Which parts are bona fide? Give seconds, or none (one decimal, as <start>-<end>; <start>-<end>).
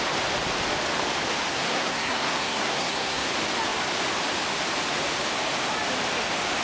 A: 0.0-1.5; 3.3-6.6